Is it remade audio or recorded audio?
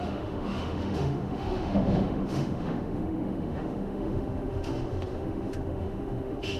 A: remade